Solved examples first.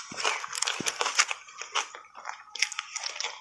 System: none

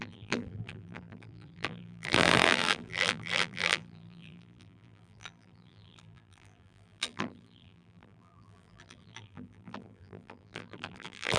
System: vocoder, BigVGAN v2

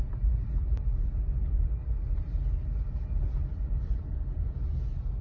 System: none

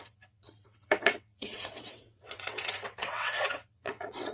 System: vocoder, WaveNeXt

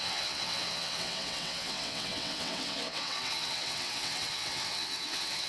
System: vocoder, WaveNeXt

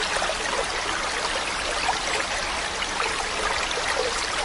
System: none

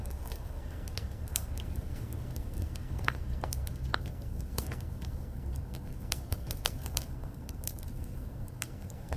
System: codec, SNAC